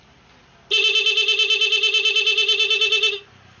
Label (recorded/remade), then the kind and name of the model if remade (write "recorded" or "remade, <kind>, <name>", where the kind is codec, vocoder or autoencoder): recorded